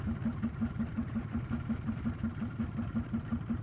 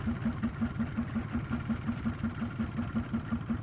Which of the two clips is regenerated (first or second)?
first